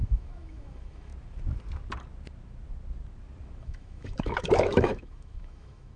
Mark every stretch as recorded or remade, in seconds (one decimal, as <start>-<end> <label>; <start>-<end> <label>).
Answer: 0.0-1.1 remade; 1.1-3.6 recorded; 3.6-6.0 remade